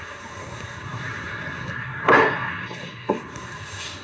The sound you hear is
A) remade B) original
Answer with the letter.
A